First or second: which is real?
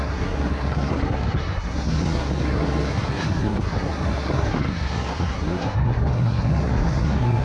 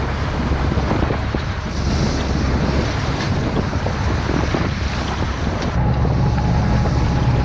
second